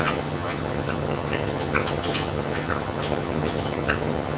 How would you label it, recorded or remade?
remade